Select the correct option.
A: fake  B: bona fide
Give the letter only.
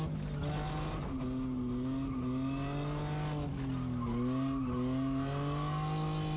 B